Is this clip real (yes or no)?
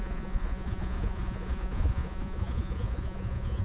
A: no